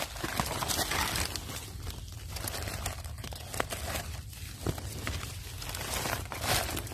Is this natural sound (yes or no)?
yes